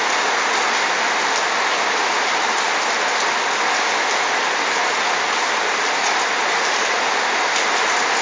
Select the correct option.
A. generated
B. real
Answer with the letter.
B